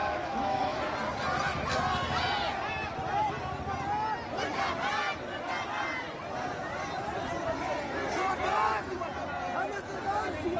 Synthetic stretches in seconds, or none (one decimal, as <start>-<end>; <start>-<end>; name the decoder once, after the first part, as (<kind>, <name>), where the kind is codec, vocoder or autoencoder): 0.0-0.8 (autoencoder, DAC-VAE)